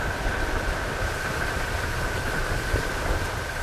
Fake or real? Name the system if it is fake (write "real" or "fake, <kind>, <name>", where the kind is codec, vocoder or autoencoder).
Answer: fake, vocoder, BigVGAN v2